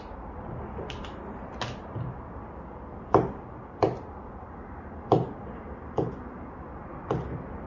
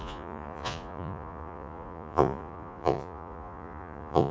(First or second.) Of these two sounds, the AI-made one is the second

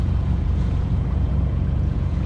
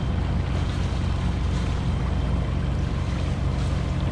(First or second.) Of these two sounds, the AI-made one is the first